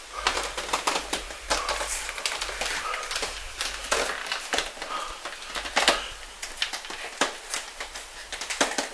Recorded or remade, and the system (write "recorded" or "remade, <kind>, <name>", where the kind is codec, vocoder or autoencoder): remade, vocoder, BigVGAN v2